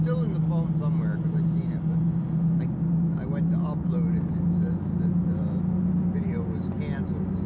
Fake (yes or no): no